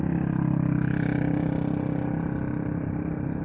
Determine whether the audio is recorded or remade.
recorded